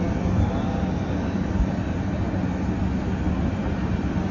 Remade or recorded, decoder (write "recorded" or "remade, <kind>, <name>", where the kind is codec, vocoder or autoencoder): recorded